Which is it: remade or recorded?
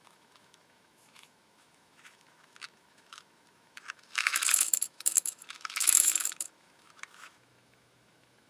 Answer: remade